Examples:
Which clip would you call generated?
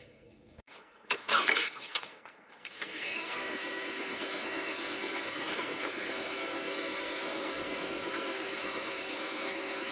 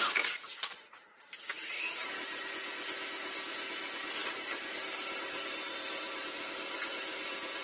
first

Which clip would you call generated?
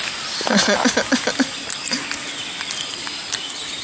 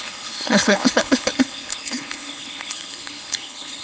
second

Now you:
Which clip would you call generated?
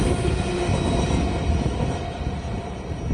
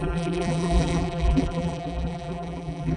second